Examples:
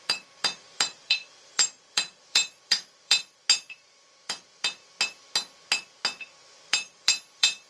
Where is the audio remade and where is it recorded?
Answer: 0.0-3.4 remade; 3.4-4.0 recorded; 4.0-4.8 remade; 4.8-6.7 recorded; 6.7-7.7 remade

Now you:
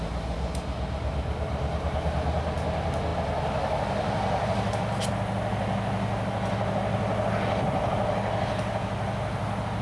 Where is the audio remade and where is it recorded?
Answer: 0.0-9.8 recorded

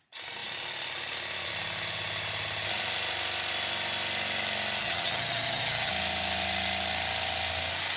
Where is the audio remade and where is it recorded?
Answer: 0.0-4.8 recorded; 4.8-5.9 remade; 5.9-8.0 recorded